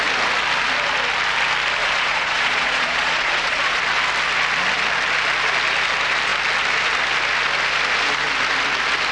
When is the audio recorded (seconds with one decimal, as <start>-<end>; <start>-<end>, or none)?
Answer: 0.0-1.8; 3.8-9.1